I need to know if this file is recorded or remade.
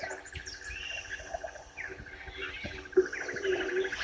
recorded